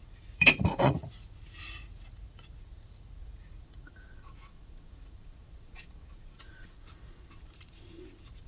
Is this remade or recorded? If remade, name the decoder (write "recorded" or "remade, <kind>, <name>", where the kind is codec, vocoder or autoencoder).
remade, vocoder, Vocos